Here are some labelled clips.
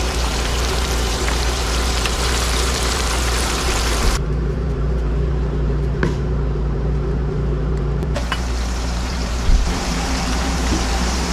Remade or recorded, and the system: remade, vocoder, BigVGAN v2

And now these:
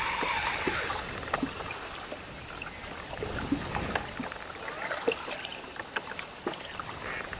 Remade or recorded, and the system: remade, vocoder, BigVGAN v2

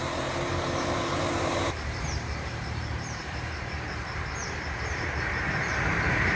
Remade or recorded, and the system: remade, vocoder, BigVGAN v2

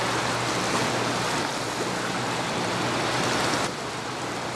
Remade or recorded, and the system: recorded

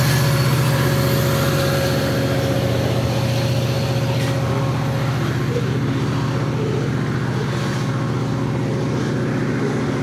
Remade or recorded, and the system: recorded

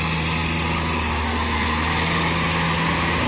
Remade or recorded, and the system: recorded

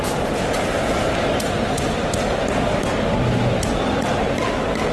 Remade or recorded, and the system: recorded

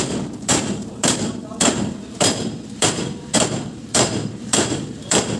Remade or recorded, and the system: remade, vocoder, BigVGAN v2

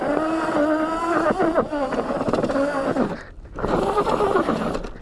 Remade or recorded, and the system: recorded